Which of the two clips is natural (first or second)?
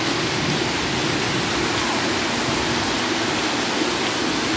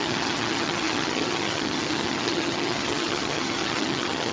first